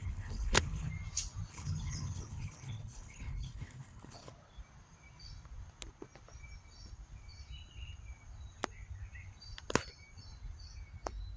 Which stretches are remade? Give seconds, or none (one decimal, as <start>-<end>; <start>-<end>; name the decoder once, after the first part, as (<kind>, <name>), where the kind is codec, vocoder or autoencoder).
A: 0.0-0.9 (codec, HILCodec); 1.5-4.3